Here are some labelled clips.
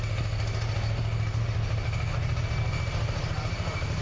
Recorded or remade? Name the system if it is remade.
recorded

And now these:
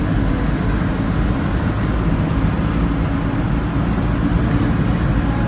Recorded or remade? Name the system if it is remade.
recorded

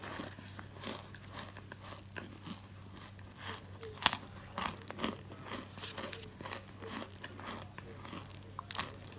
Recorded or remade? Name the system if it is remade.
recorded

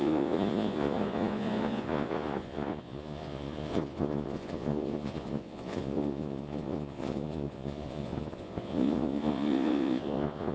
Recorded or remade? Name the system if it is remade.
remade, vocoder, Vocos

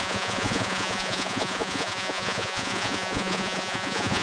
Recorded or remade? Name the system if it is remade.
remade, vocoder, Vocos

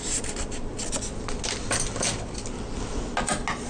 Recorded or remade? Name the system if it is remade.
recorded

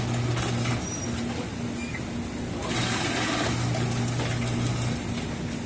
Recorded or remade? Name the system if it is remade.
recorded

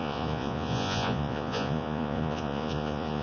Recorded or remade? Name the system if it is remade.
remade, vocoder, Vocos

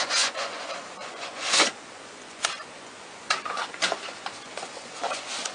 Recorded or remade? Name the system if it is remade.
remade, vocoder, Vocos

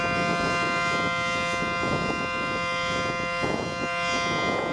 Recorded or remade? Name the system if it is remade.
recorded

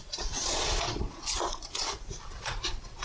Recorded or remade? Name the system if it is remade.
remade, vocoder, Vocos